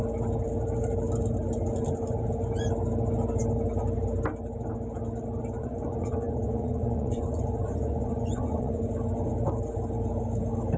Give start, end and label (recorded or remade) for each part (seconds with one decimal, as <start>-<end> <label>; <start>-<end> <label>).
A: 0.0-5.6 recorded; 5.6-8.8 remade; 8.8-10.8 recorded